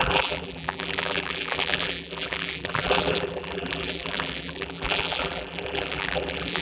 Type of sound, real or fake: fake